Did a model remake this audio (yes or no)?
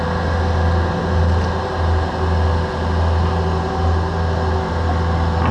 no